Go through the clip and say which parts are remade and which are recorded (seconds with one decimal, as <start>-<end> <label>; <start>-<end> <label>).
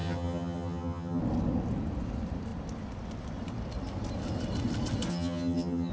0.0-1.2 remade; 1.2-5.1 recorded; 5.1-5.9 remade